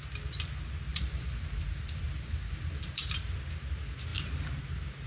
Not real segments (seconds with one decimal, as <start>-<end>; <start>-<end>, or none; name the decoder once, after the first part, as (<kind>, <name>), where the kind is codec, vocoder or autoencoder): 0.9-3.0 (vocoder, BigVGAN v2)